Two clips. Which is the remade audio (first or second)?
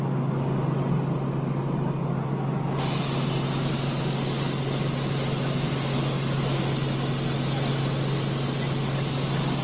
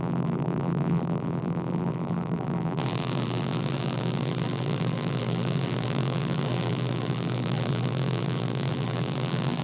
second